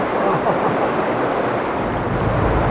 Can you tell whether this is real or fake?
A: real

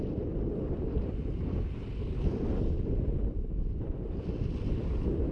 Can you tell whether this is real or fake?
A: fake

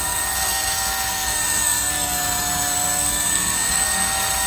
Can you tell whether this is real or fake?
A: fake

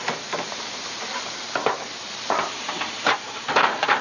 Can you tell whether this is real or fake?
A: fake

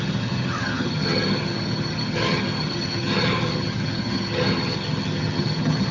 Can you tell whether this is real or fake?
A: fake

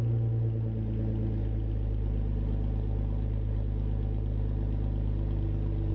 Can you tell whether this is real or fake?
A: real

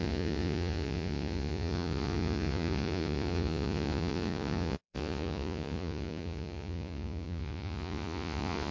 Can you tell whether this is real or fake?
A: fake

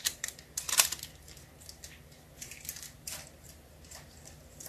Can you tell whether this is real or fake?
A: fake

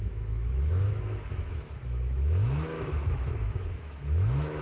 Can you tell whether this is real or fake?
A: fake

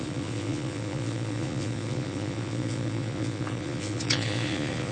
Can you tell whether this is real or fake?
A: fake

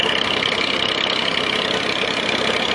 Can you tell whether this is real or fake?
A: real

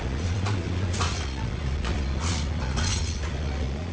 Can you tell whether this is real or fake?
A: fake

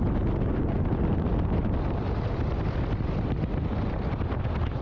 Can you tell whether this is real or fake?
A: real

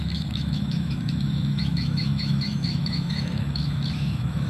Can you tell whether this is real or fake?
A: fake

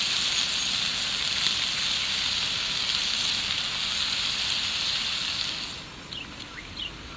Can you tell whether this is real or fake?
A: real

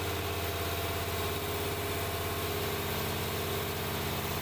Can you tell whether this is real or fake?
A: real